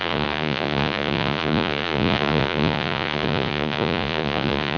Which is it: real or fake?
fake